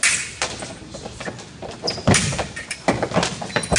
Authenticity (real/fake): real